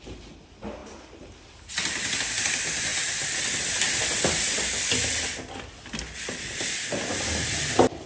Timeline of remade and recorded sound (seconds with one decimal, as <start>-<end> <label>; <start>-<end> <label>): 0.0-2.9 recorded; 2.9-3.7 remade; 3.7-8.1 recorded